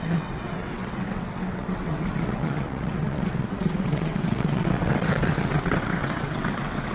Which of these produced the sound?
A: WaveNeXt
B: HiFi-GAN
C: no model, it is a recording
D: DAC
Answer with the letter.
A